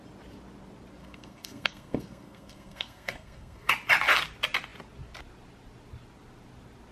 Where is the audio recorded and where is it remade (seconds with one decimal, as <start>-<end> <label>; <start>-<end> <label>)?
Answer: 0.0-1.0 recorded; 1.0-3.7 remade; 3.7-6.9 recorded